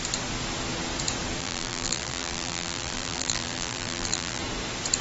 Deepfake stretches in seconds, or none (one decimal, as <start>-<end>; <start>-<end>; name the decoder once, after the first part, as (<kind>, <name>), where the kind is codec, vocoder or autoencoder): 1.4-4.4 (vocoder, BigVGAN v2)